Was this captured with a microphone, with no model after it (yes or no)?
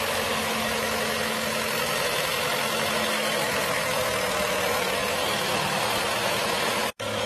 no